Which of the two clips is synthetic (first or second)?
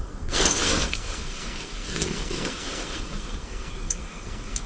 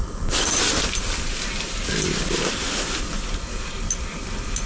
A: first